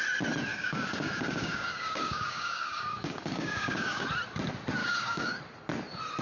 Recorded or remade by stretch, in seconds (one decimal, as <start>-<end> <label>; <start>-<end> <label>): 0.0-0.5 recorded; 0.5-4.0 remade; 4.0-4.8 recorded; 4.8-5.4 remade; 5.4-6.2 recorded